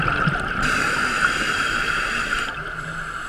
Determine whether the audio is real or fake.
real